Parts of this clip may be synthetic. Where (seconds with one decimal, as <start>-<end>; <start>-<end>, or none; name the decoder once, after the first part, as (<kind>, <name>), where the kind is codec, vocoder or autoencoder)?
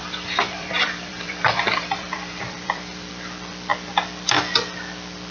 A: 0.0-3.1 (vocoder, BigVGAN v2)